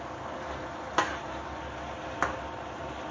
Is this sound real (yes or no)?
yes